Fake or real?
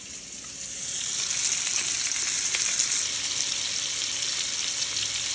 real